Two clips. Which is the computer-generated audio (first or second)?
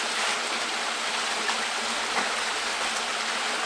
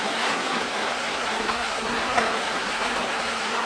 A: second